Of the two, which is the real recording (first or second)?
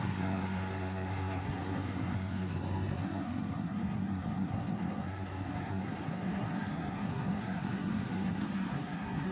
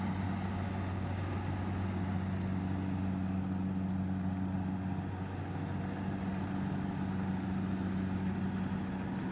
second